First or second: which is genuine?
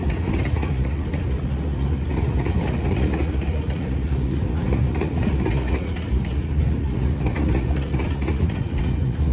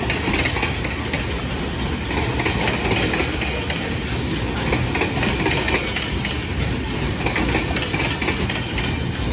second